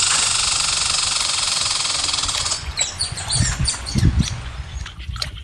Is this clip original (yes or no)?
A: no